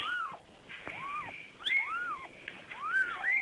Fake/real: real